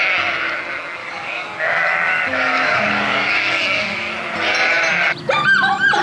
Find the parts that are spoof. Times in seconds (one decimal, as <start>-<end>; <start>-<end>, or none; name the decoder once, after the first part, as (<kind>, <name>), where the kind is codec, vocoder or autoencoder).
1.0-4.1 (codec, DAC)

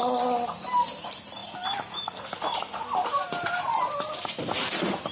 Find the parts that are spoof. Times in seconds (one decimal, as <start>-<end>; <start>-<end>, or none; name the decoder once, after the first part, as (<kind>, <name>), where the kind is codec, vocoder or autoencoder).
none

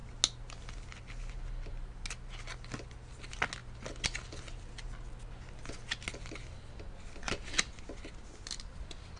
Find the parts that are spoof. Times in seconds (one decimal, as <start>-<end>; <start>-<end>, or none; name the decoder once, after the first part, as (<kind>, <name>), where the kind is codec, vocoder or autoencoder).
none

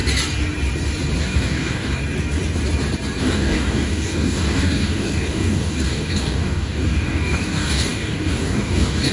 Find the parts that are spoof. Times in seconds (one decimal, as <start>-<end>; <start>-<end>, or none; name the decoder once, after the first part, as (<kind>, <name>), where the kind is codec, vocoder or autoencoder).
1.2-2.0 (codec, DAC); 3.2-9.1

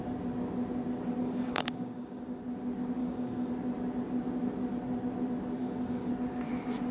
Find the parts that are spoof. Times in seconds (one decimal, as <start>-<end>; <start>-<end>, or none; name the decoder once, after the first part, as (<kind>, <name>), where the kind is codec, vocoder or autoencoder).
1.2-2.4 (codec, DAC); 3.0-3.5; 5.6-6.1

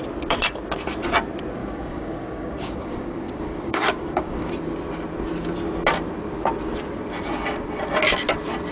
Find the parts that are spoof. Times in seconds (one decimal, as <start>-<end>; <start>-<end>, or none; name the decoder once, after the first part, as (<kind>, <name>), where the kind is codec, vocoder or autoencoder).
1.6-4.5 (codec, DAC)

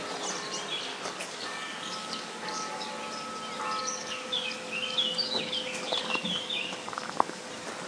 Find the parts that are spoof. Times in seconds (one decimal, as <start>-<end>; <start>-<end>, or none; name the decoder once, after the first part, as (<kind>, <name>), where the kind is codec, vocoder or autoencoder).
0.9-2.9 (codec, DAC); 3.8-7.5